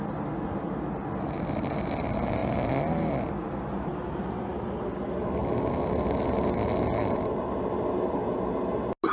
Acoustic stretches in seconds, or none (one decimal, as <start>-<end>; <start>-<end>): 0.0-9.1

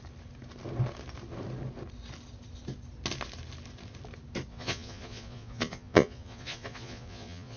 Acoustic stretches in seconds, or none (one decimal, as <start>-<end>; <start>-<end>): 0.0-4.5